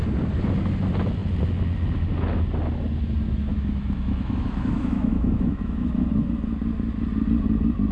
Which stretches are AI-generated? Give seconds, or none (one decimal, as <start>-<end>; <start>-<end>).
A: 3.5-5.9